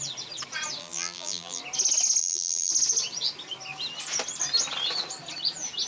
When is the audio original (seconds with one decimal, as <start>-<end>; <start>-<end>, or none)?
0.0-0.8; 1.6-2.2; 2.7-5.9